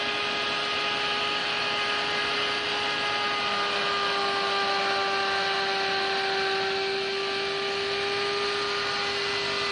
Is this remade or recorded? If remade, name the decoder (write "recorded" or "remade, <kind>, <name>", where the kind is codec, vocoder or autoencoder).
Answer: recorded